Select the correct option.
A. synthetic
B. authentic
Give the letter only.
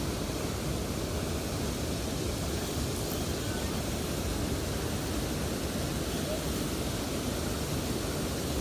B